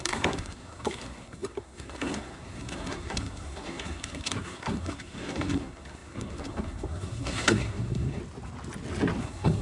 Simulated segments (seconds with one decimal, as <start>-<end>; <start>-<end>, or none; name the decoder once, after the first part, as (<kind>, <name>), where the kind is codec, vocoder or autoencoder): 0.0-8.2 (codec, SNAC); 9.2-9.6